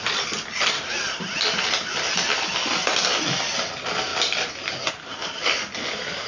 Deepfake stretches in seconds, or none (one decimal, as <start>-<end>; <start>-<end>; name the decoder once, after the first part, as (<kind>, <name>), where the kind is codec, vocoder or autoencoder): none